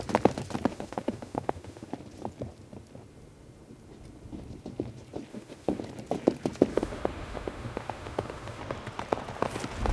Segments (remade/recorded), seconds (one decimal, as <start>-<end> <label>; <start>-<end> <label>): 0.0-0.7 recorded; 0.7-1.9 remade; 1.9-5.3 recorded; 5.3-5.8 remade; 5.8-6.7 recorded; 6.7-8.6 remade; 8.6-9.9 recorded